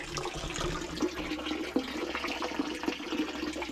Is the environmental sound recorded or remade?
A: recorded